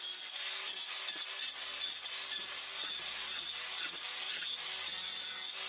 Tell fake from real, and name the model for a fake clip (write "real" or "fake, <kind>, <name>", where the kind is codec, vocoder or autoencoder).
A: real